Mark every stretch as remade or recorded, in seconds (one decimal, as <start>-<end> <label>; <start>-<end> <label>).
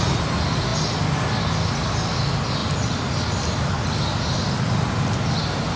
0.0-5.8 recorded